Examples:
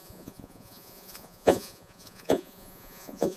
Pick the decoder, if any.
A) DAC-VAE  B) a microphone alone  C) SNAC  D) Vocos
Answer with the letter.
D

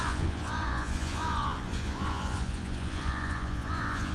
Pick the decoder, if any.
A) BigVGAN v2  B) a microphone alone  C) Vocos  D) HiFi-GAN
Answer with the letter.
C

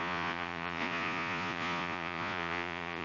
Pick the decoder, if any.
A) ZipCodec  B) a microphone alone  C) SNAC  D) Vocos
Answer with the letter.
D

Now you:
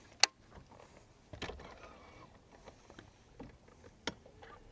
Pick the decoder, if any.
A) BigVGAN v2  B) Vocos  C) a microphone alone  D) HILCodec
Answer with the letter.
C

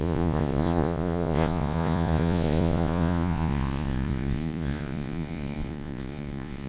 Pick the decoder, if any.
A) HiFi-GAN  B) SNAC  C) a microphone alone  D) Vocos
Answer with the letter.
D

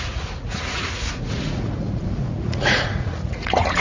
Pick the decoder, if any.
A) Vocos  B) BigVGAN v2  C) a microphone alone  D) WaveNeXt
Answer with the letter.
A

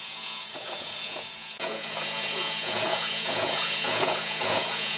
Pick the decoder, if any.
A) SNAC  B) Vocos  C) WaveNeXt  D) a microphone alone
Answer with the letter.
B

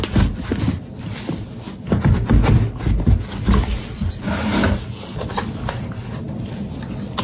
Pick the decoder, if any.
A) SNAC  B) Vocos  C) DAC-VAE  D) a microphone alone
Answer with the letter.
D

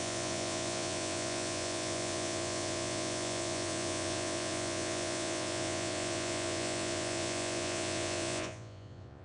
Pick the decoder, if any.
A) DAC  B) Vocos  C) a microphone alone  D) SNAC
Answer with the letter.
B